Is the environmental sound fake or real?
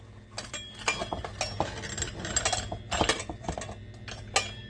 real